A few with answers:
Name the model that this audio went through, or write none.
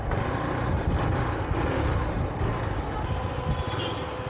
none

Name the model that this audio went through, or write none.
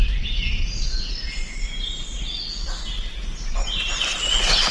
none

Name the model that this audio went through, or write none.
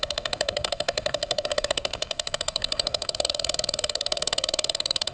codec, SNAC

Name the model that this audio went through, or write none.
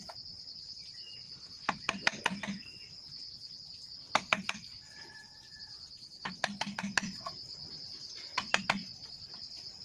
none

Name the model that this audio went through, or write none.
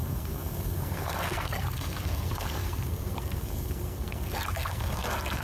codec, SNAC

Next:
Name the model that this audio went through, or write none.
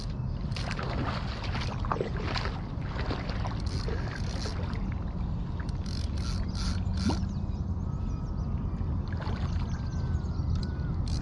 none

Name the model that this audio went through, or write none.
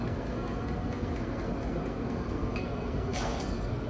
codec, SNAC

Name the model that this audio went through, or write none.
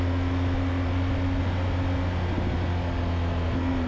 none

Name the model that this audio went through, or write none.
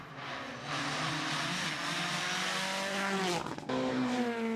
none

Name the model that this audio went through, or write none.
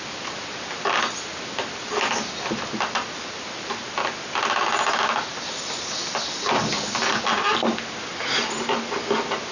none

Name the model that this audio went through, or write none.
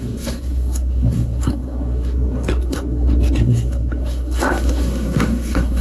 codec, SNAC